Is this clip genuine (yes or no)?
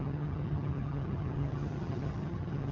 no